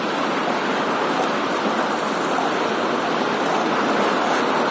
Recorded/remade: recorded